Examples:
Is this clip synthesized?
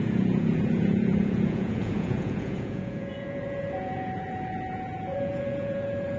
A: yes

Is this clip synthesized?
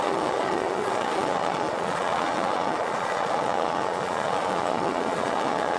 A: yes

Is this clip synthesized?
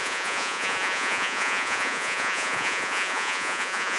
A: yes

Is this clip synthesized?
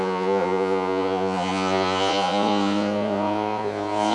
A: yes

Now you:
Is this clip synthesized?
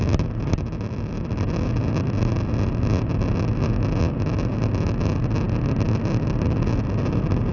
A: no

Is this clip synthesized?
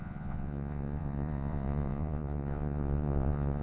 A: yes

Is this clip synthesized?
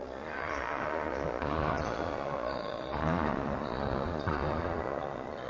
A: yes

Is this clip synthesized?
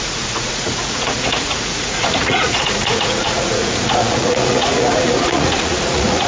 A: yes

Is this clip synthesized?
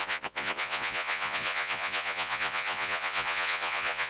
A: yes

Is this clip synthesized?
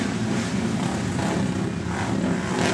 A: no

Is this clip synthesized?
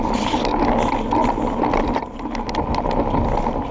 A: no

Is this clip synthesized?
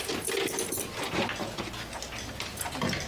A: no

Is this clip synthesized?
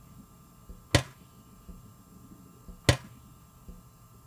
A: no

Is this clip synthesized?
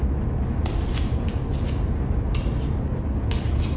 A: no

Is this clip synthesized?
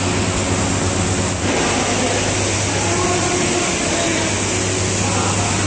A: no